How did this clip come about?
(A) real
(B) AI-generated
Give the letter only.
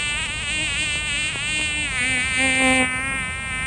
A